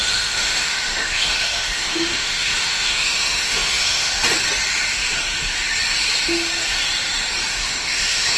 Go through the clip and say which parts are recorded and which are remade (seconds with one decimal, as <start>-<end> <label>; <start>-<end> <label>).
0.0-4.1 remade; 4.1-7.5 recorded; 7.5-8.4 remade